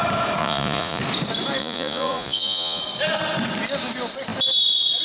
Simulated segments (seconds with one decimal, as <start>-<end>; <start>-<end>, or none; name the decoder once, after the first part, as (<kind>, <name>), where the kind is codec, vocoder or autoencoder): 0.4-1.0 (vocoder, Vocos); 1.6-2.8